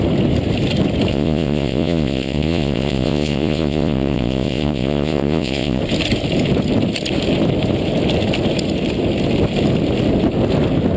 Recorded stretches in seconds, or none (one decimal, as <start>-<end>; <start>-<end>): 0.0-1.1; 5.8-11.0